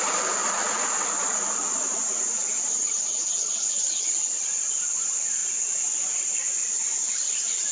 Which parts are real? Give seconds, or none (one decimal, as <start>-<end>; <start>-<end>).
0.0-2.7; 4.4-7.7